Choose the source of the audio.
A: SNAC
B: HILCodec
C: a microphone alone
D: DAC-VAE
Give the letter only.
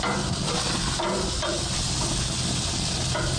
C